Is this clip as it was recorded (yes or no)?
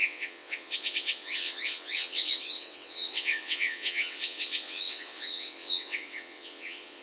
no